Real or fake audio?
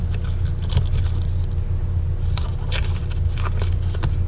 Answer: real